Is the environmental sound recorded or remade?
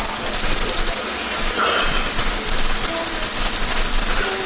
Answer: recorded